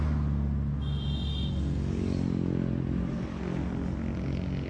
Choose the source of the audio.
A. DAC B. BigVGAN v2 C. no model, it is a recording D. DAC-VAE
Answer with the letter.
C